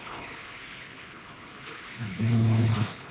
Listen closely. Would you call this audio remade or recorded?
remade